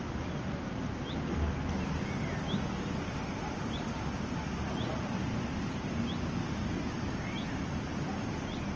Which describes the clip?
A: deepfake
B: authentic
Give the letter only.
B